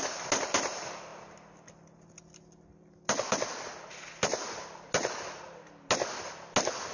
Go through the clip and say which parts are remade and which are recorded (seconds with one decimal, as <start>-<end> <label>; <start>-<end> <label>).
0.0-6.9 recorded